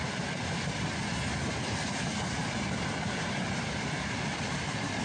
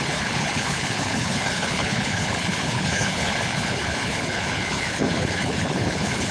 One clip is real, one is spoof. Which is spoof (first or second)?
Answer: second